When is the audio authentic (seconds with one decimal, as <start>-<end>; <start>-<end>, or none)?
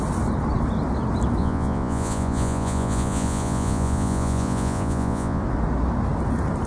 0.0-1.4; 5.4-6.7